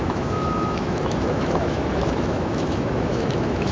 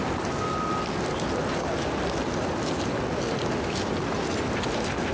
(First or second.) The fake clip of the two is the first